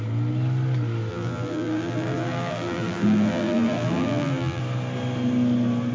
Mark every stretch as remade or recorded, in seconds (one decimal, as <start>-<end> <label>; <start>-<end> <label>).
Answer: 0.0-1.1 recorded; 1.1-4.6 remade; 4.6-5.9 recorded